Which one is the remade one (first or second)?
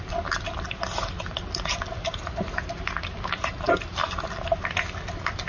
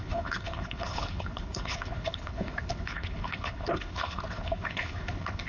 second